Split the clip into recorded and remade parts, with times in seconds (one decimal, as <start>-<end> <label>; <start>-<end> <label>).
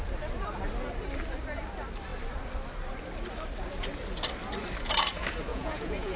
0.0-5.5 recorded; 5.5-6.2 remade